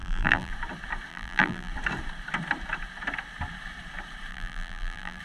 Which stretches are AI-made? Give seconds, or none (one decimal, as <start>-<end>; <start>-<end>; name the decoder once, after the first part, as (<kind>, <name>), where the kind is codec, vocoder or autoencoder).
0.0-0.5 (vocoder, BigVGAN v2); 1.1-1.7; 4.3-5.2